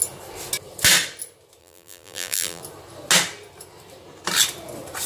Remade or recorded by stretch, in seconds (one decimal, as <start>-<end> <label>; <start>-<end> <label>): 0.0-1.6 recorded; 1.6-2.6 remade; 2.6-5.1 recorded